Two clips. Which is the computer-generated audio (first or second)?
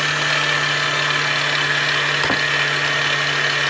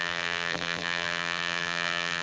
second